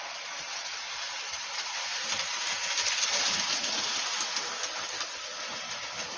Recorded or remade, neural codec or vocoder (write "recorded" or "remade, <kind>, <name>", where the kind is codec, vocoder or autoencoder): recorded